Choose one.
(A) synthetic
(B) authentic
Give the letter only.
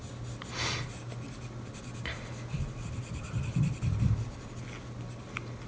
B